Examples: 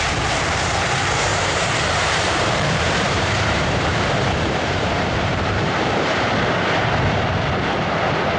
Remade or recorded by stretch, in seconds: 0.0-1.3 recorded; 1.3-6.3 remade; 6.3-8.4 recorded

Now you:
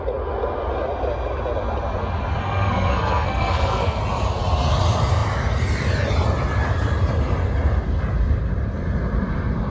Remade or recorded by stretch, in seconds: 0.0-2.4 recorded; 2.4-4.0 remade; 4.0-9.7 recorded